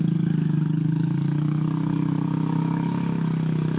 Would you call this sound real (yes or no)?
no